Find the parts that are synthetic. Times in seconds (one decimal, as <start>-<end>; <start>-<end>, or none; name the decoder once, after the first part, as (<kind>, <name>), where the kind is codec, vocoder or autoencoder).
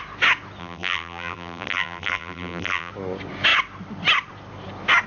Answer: 0.6-2.9 (vocoder, BigVGAN v2)